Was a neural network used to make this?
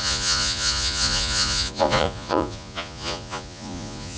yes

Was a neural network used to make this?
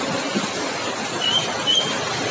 no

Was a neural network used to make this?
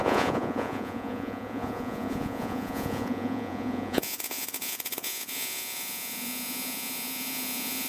yes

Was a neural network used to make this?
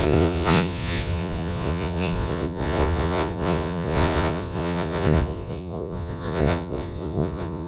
yes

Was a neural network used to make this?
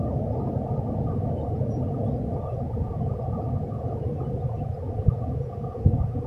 yes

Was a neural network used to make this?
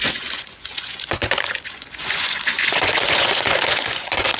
yes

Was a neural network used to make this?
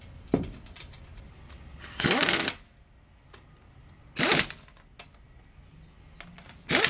no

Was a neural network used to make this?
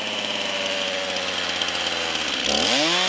no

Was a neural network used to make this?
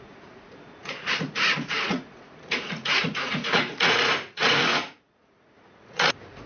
yes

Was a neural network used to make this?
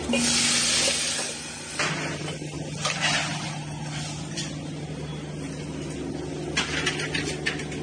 no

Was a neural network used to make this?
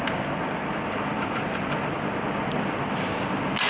no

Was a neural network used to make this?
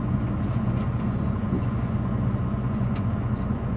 yes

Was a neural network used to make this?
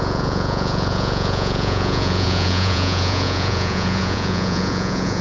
yes